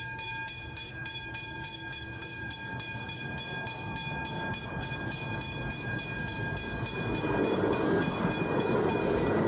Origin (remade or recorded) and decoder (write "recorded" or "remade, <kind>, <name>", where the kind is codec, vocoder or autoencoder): remade, codec, DAC